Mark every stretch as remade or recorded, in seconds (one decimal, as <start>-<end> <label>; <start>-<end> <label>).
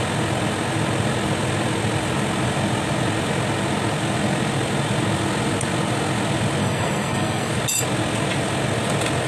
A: 0.0-6.6 recorded; 6.6-7.5 remade; 7.5-9.3 recorded